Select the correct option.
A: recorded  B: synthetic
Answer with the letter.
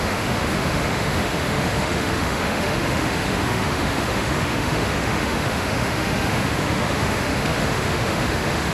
B